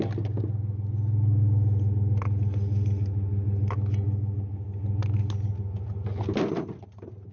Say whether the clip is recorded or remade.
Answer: recorded